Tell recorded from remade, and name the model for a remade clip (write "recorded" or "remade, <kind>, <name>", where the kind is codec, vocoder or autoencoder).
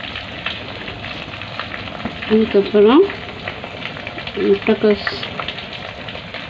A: recorded